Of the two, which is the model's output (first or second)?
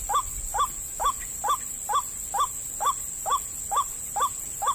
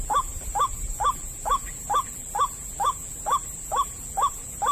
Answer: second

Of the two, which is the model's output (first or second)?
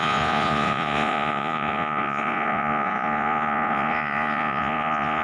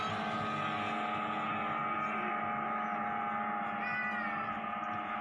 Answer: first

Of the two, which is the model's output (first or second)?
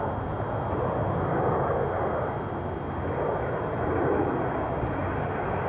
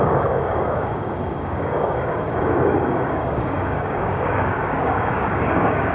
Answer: second